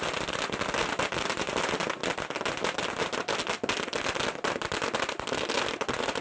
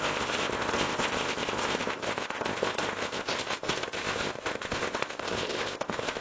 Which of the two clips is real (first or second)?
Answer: first